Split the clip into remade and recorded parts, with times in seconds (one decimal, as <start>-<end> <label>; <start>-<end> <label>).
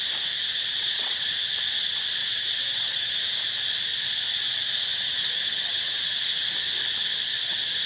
0.0-0.7 recorded; 0.7-1.3 remade; 1.3-2.2 recorded; 2.2-3.1 remade; 3.1-4.9 recorded; 4.9-6.2 remade; 6.2-7.9 recorded